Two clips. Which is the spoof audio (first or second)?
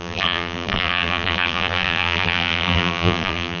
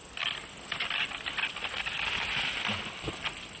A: first